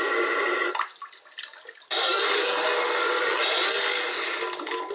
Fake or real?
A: real